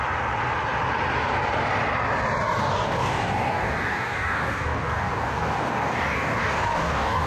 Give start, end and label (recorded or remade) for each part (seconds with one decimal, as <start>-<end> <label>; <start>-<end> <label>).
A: 0.0-2.6 recorded; 2.6-7.3 remade